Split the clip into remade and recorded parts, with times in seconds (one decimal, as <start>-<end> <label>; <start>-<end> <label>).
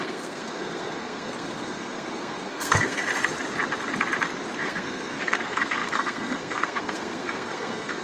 0.0-3.0 remade; 3.0-4.6 recorded; 4.6-8.0 remade